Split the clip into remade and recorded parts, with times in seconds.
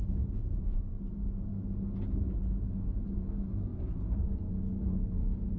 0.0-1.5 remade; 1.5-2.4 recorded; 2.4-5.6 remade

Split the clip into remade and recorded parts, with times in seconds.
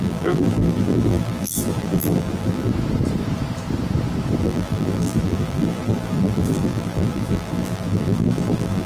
0.0-2.7 remade; 2.7-4.4 recorded; 4.4-8.9 remade